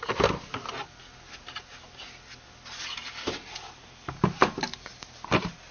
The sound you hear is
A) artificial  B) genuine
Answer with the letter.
B